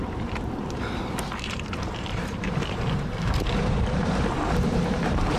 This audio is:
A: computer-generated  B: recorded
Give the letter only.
A